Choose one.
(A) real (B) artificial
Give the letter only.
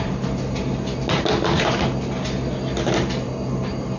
A